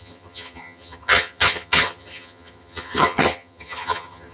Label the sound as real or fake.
fake